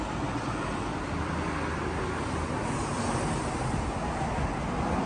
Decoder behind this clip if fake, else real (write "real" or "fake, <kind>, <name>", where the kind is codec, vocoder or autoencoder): real